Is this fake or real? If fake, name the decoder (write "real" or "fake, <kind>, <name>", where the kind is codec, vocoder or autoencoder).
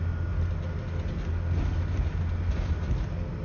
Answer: real